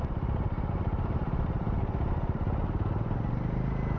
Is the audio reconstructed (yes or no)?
yes